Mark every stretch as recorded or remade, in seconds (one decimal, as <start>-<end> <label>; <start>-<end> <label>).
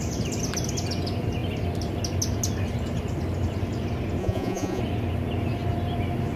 0.0-4.2 recorded; 4.2-4.8 remade; 4.8-6.4 recorded